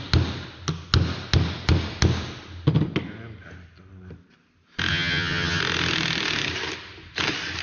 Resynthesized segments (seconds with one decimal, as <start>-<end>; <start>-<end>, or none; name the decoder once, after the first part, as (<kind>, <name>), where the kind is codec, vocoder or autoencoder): 4.9-5.6 (vocoder, HiFi-GAN)